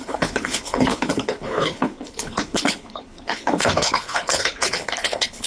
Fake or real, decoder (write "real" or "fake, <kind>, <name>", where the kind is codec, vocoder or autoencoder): fake, codec, HILCodec